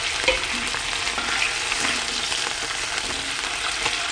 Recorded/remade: recorded